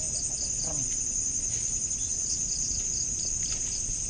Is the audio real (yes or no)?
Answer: yes